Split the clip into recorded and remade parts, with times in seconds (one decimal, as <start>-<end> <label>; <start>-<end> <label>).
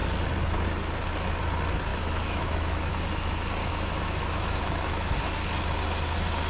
0.0-1.9 recorded; 1.9-2.9 remade; 2.9-3.6 recorded; 3.6-5.1 remade; 5.1-6.5 recorded